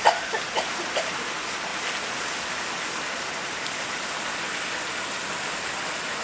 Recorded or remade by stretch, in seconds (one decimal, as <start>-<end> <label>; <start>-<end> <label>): 0.0-6.2 recorded